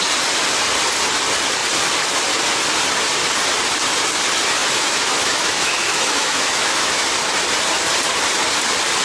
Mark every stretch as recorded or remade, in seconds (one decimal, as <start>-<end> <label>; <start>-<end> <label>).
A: 0.0-4.6 recorded; 4.6-7.1 remade; 7.1-9.0 recorded